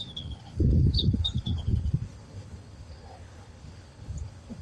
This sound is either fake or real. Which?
fake